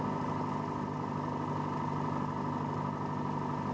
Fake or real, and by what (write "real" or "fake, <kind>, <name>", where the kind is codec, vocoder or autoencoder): real